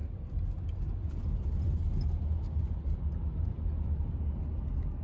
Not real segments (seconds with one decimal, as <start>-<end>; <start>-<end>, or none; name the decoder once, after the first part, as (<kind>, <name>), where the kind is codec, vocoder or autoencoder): none